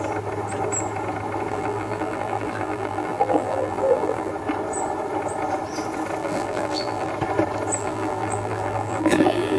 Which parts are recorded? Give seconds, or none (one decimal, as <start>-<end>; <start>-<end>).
0.0-1.5; 4.3-6.2; 7.1-7.8